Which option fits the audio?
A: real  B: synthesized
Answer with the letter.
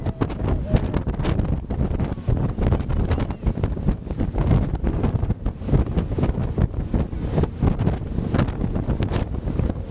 A